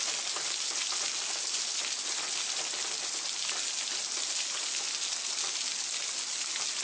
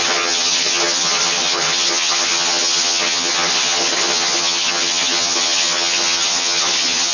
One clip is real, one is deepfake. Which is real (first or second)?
first